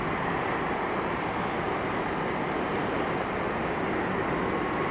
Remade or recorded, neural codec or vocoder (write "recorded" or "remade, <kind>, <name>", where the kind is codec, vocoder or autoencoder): recorded